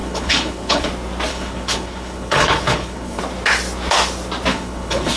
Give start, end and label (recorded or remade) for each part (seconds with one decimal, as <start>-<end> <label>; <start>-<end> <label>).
0.0-0.9 remade; 0.9-1.3 recorded; 1.3-3.2 remade; 3.2-4.5 recorded; 4.5-5.2 remade